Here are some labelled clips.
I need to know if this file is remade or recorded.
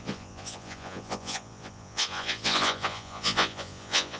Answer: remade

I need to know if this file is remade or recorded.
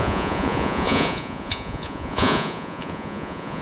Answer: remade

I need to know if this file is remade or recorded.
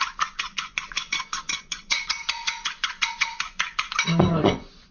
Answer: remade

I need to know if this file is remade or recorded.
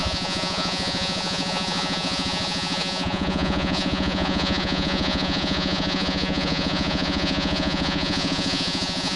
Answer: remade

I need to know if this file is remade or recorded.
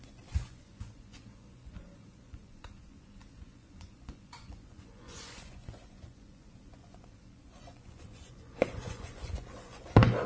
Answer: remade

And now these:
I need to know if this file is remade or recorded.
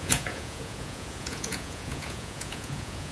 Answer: remade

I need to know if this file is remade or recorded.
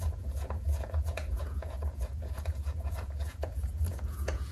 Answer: remade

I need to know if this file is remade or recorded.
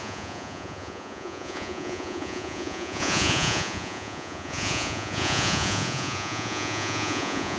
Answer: remade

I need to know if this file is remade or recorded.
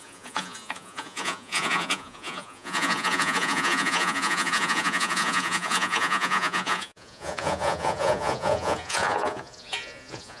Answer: remade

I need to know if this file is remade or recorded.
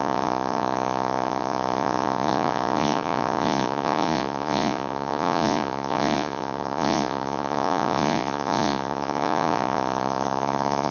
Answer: remade